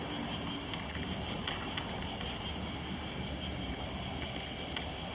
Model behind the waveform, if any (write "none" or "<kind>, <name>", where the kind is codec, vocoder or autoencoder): none